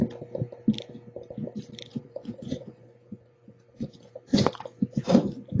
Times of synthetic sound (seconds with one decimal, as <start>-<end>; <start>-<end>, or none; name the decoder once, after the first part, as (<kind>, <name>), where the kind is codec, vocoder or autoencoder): 1.9-5.6 (vocoder, Vocos)